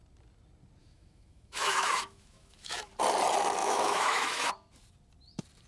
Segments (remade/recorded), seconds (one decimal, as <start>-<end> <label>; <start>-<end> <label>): 0.0-0.8 recorded; 0.8-2.9 remade; 2.9-3.6 recorded; 3.6-4.5 remade; 4.5-5.7 recorded